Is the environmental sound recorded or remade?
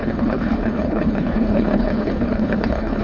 remade